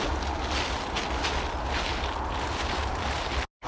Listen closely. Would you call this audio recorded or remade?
recorded